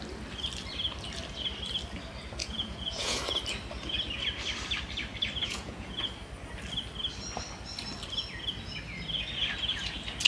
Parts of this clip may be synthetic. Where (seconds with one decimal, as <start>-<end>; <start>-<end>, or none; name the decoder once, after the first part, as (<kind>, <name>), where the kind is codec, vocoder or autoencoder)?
2.4-3.2 (vocoder, Vocos); 5.4-6.1